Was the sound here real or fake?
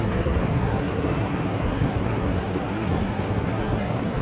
fake